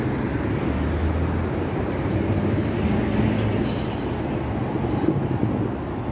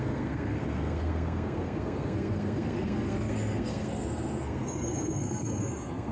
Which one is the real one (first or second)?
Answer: first